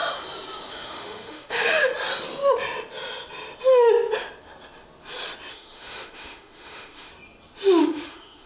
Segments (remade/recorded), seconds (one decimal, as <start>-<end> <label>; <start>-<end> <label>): 0.0-0.7 recorded; 0.7-1.9 remade; 1.9-5.5 recorded; 5.5-7.1 remade; 7.1-7.8 recorded; 7.8-8.5 remade